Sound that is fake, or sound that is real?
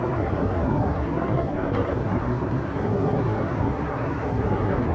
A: fake